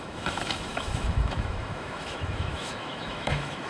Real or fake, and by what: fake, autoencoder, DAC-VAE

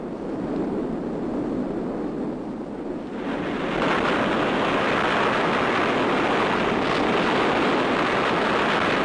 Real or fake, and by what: real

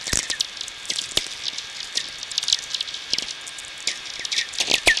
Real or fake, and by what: real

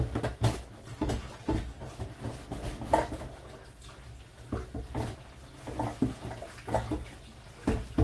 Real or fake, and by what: real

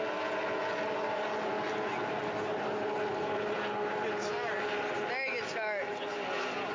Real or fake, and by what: real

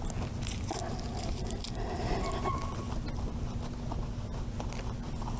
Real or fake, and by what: real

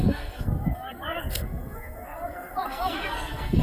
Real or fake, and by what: fake, codec, SNAC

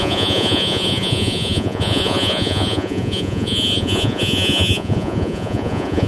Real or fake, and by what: fake, vocoder, Vocos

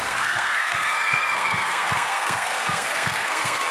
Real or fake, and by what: fake, codec, SNAC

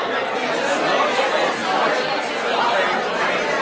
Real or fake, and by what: real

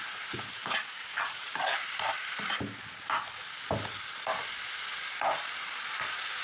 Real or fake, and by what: real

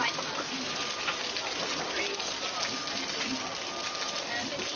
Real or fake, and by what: real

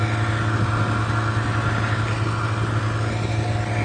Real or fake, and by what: real